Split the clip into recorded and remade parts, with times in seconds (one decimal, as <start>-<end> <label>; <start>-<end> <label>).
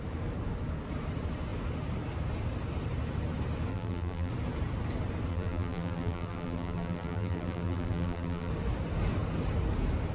0.0-3.7 recorded; 3.7-4.3 remade; 4.3-5.3 recorded; 5.3-8.5 remade; 8.5-10.1 recorded